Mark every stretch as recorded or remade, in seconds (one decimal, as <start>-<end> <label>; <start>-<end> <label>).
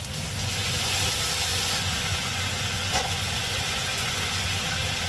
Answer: 0.0-0.4 recorded; 0.4-1.0 remade; 1.0-1.5 recorded; 1.5-4.6 remade; 4.6-5.1 recorded